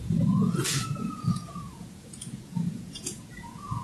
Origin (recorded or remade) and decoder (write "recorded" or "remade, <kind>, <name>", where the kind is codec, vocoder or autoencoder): remade, vocoder, Vocos